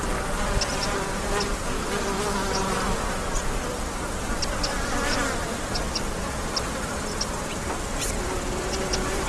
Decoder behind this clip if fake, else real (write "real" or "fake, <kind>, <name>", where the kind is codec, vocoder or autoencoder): real